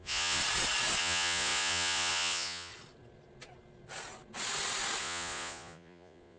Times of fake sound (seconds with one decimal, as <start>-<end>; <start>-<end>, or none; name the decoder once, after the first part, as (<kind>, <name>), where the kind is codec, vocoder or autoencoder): 0.0-0.4 (vocoder, Vocos); 1.0-2.7; 5.0-6.4